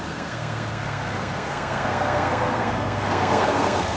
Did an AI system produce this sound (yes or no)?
yes